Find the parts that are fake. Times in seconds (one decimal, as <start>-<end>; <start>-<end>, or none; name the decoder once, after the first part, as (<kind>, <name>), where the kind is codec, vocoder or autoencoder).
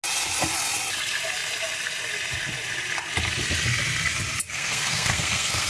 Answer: 4.5-5.7 (codec, SNAC)